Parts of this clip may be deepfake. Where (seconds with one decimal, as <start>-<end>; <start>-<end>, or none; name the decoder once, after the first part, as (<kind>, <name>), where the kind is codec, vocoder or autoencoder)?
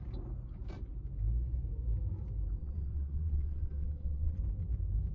2.6-4.4 (vocoder, WaveNeXt)